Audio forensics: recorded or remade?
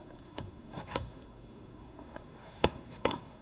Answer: remade